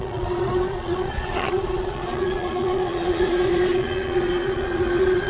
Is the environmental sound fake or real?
fake